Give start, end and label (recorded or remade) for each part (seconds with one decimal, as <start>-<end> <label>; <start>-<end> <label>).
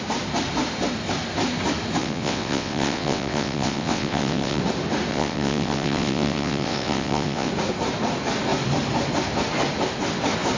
0.0-2.0 recorded; 2.0-4.6 remade; 4.6-5.1 recorded; 5.1-7.5 remade; 7.5-10.6 recorded